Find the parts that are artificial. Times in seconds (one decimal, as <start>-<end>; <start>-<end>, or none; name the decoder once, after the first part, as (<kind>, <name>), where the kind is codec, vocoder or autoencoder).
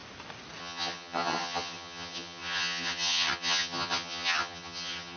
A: 0.6-5.2 (vocoder, HiFi-GAN)